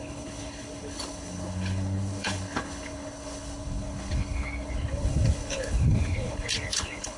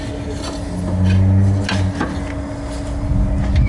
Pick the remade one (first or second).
first